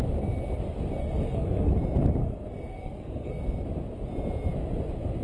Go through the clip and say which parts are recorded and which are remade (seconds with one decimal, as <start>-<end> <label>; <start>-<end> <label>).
0.0-1.0 recorded; 1.0-1.7 remade; 1.7-2.2 recorded; 2.2-3.4 remade; 3.4-5.2 recorded